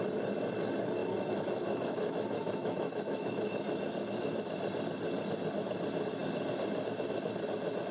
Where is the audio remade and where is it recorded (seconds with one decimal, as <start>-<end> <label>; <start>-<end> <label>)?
0.0-1.0 recorded; 1.0-4.4 remade; 4.4-7.9 recorded